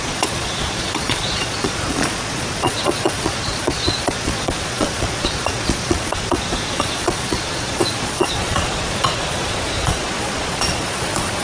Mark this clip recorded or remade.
remade